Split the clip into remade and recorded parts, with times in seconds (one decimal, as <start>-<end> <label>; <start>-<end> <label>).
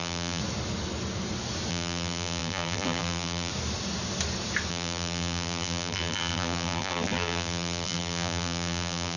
0.0-0.4 remade; 0.4-1.7 recorded; 1.7-3.5 remade; 3.5-4.7 recorded; 4.7-9.2 remade